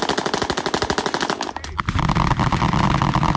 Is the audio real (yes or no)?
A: yes